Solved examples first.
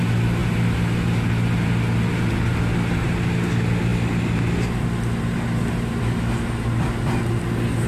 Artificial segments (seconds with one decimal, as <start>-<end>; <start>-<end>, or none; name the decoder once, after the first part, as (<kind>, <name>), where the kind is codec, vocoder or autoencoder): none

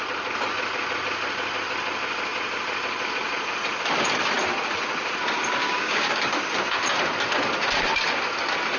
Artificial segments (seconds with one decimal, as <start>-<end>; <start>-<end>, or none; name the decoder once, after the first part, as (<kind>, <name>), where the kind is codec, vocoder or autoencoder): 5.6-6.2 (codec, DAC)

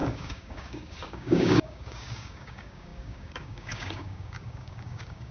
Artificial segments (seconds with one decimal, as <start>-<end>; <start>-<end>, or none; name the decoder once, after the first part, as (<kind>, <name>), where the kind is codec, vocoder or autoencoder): 0.0-5.3 (codec, DAC)

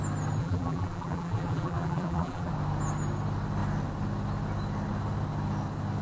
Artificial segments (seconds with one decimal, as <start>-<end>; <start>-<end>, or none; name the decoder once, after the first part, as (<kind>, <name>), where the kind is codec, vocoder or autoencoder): 0.4-2.5 (vocoder, BigVGAN v2)

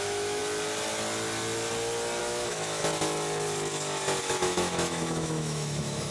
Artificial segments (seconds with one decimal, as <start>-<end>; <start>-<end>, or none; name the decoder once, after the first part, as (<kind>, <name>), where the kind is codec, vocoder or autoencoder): 0.0-0.4 (autoencoder, DAC-VAE); 2.2-2.8; 4.2-6.1

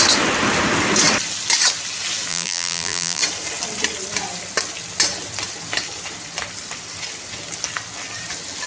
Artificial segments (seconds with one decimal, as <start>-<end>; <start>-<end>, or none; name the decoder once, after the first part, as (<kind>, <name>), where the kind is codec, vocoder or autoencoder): 2.3-3.2 (vocoder, BigVGAN v2)

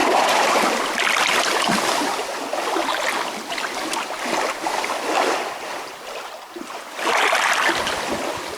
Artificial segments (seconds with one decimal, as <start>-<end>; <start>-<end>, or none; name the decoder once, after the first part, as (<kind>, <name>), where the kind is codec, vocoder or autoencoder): 0.0-0.5 (vocoder, BigVGAN v2)

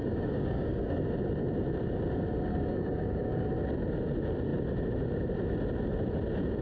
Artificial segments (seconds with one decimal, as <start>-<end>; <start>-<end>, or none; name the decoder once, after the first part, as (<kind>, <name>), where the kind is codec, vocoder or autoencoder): 0.0-1.0 (codec, DAC); 2.5-3.5